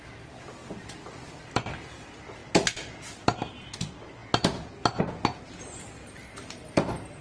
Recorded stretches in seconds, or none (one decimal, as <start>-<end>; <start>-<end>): 0.0-7.2